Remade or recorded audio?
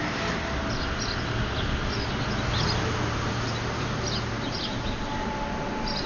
recorded